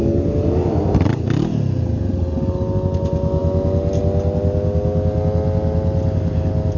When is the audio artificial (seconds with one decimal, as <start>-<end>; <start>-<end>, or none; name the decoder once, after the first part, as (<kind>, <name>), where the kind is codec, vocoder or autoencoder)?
none